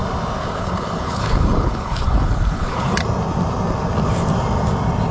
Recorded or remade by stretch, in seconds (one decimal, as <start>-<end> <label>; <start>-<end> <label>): 0.0-0.4 recorded; 0.4-2.9 remade; 2.9-5.1 recorded